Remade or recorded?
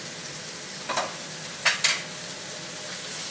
recorded